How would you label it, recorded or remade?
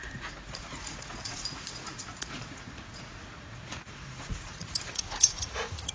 remade